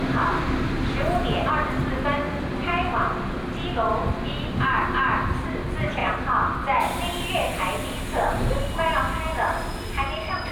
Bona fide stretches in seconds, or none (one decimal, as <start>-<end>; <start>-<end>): 0.0-10.5